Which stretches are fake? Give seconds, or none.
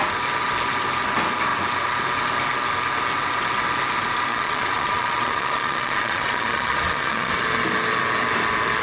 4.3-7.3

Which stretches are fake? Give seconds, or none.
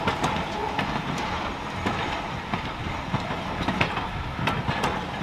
none